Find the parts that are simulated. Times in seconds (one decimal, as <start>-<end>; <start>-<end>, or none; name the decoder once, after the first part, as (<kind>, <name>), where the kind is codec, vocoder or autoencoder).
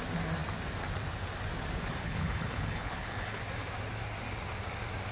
2.0-3.4 (codec, HILCodec)